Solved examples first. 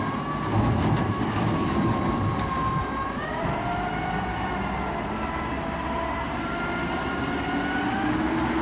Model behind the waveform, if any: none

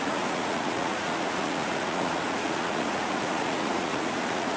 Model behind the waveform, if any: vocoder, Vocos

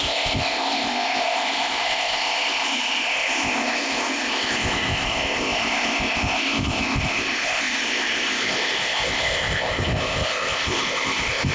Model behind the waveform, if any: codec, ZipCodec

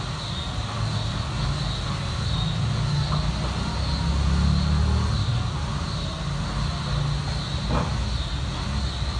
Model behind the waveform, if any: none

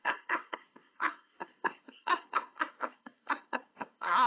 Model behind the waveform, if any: codec, SNAC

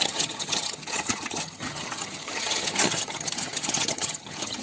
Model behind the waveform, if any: vocoder, HiFi-GAN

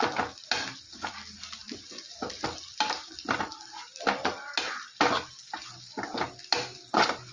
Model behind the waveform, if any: none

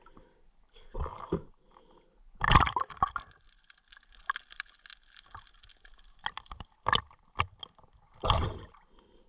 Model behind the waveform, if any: none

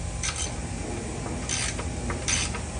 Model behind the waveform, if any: none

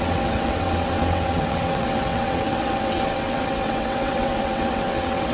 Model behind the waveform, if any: vocoder, WaveNeXt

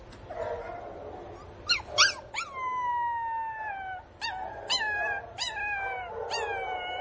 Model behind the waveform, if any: none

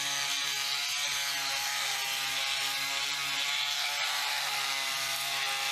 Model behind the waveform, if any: none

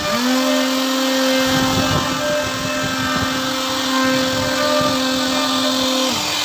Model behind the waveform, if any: none